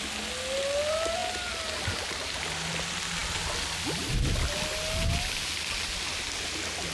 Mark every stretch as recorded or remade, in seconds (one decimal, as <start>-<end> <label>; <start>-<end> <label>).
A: 0.0-6.9 recorded